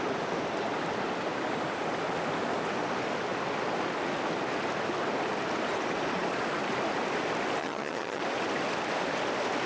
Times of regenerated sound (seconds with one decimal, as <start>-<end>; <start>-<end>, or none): 7.6-8.2